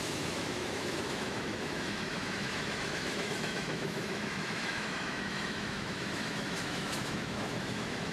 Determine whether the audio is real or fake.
fake